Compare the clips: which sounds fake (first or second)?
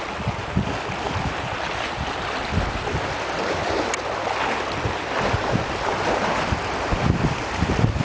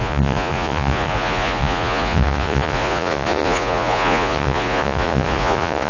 second